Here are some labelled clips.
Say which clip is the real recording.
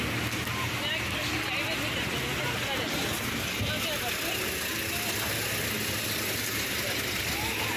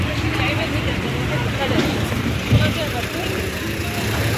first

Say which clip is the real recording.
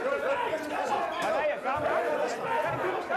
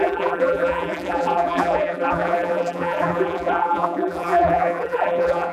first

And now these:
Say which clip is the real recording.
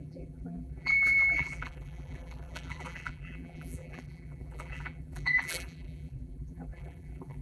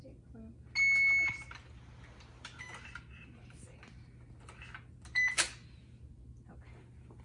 second